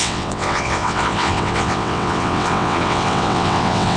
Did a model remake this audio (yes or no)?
yes